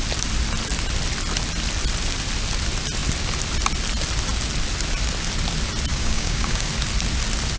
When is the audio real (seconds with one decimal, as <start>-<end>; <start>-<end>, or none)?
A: 0.0-5.9; 6.7-7.6